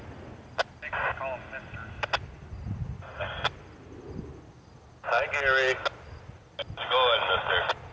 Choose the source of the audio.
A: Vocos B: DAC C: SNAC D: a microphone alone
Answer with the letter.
D